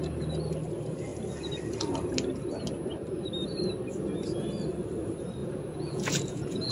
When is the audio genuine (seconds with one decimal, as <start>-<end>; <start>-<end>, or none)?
0.0-5.4